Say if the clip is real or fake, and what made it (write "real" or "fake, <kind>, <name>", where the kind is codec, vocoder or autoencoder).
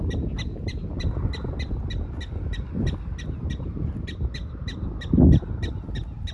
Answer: real